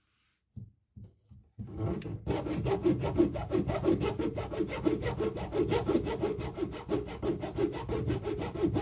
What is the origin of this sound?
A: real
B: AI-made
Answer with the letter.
A